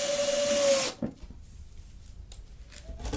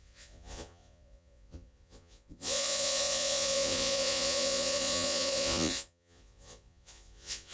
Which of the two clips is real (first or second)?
first